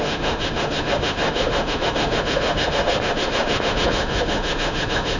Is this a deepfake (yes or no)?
yes